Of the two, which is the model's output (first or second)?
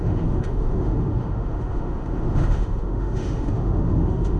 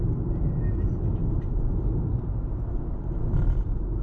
first